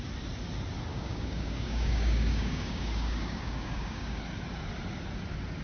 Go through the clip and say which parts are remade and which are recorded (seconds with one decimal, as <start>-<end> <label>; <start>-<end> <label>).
0.0-0.9 recorded; 0.9-4.2 remade; 4.2-5.6 recorded

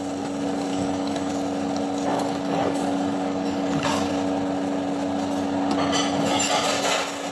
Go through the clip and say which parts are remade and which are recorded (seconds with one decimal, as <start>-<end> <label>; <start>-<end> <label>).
0.0-0.7 recorded; 0.7-1.3 remade; 1.3-2.1 recorded; 2.1-4.1 remade; 4.1-7.3 recorded

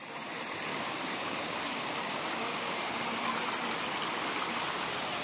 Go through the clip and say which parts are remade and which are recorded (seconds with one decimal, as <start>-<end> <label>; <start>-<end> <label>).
0.0-0.7 recorded; 0.7-2.9 remade; 2.9-5.2 recorded

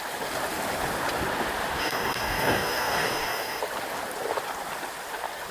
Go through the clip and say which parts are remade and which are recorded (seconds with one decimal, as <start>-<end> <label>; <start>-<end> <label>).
0.0-1.8 recorded; 1.8-3.6 remade; 3.6-5.5 recorded

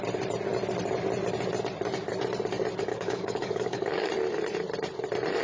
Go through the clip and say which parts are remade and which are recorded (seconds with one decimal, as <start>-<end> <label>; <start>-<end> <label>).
0.0-2.9 recorded; 2.9-4.1 remade; 4.1-5.4 recorded

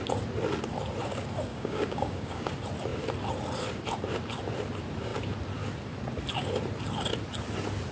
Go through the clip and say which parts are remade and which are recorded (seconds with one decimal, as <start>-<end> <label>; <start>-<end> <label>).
0.0-1.5 recorded; 1.5-2.5 remade; 2.5-7.9 recorded